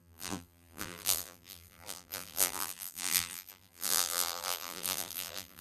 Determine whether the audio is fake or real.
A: fake